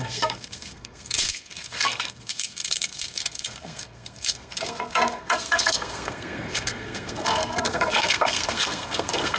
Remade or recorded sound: remade